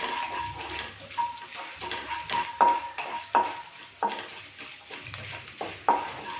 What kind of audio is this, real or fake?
real